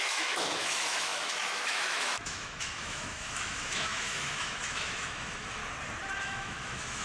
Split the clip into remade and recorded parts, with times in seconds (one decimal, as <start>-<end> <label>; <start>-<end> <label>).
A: 0.0-5.6 remade; 5.6-6.2 recorded; 6.2-7.0 remade